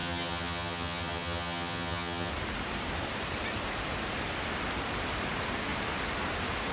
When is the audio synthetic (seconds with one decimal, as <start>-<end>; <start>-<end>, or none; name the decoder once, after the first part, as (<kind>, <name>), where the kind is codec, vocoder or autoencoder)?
0.0-2.3 (vocoder, HiFi-GAN)